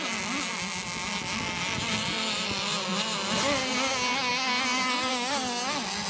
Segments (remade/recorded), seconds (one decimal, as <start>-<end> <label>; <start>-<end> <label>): 0.0-6.1 recorded